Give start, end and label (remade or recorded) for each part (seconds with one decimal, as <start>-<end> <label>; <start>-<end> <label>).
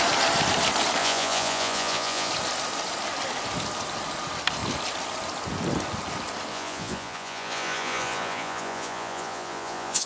0.0-1.0 recorded; 1.0-2.3 remade; 2.3-6.5 recorded; 6.5-10.1 remade